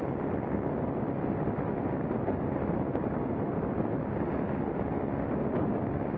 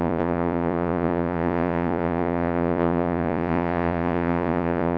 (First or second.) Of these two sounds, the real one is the first